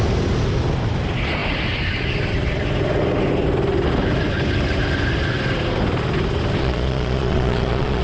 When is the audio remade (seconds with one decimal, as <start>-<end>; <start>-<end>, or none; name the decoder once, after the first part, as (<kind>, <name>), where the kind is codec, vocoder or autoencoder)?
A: 6.6-8.0 (vocoder, Vocos)